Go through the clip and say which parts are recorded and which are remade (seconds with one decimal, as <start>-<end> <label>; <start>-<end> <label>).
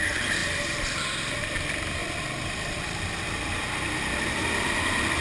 0.0-0.4 remade; 0.4-1.4 recorded; 1.4-5.2 remade